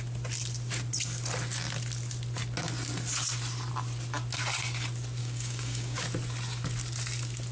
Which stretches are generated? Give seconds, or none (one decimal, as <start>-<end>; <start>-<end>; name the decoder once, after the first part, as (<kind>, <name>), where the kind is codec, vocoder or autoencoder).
5.2-6.0 (codec, DAC)